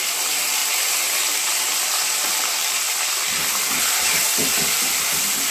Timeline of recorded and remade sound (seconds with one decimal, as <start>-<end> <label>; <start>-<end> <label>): 0.0-0.6 remade; 0.6-1.1 recorded; 1.1-5.5 remade